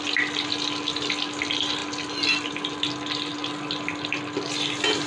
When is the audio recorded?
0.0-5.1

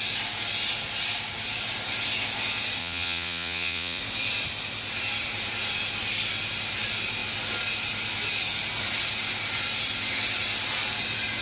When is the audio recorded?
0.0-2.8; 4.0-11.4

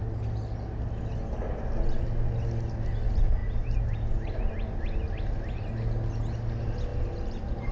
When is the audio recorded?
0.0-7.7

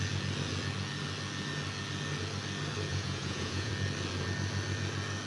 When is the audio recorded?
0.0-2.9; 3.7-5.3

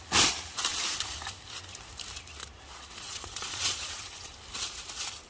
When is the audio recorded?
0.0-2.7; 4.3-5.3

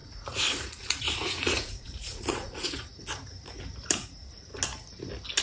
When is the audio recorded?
3.0-3.9; 4.5-5.4

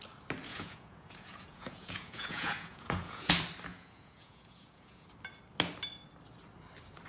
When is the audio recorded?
0.0-0.5; 3.3-3.7; 5.1-7.1